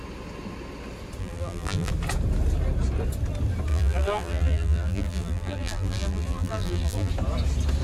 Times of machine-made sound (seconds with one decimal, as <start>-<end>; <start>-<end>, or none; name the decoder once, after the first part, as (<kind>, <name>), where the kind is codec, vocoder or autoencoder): 1.2-1.9 (vocoder, BigVGAN v2); 3.7-7.1